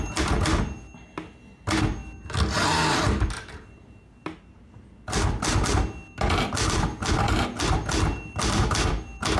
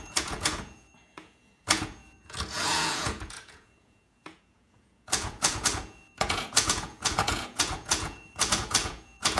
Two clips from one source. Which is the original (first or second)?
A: first